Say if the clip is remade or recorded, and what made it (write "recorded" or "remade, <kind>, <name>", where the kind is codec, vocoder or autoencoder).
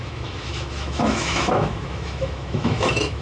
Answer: remade, autoencoder, DAC-VAE